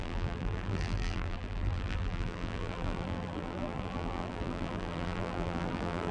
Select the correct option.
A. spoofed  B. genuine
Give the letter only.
A